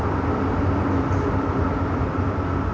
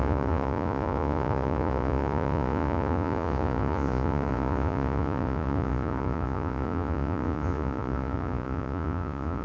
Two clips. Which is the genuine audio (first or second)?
first